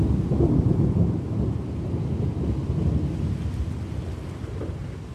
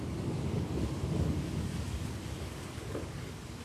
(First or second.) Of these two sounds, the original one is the first